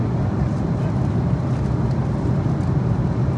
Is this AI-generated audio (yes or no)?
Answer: no